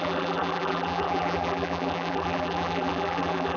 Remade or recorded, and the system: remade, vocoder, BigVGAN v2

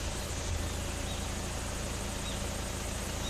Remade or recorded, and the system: recorded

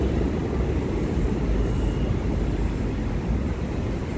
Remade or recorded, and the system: remade, vocoder, BigVGAN v2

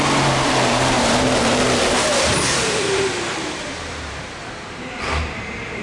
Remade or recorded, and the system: remade, vocoder, BigVGAN v2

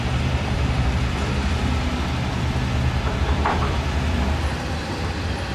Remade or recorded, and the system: remade, vocoder, BigVGAN v2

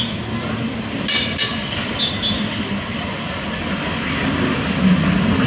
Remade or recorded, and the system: recorded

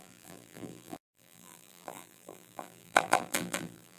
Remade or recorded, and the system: remade, vocoder, BigVGAN v2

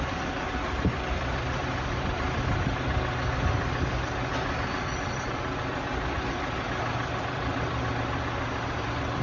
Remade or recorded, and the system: remade, vocoder, BigVGAN v2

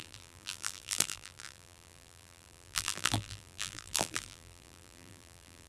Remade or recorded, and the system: remade, vocoder, BigVGAN v2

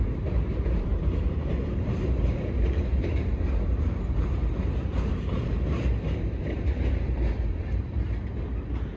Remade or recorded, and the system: remade, vocoder, BigVGAN v2